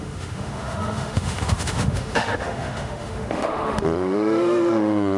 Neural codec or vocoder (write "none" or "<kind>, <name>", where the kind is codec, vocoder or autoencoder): autoencoder, DAC-VAE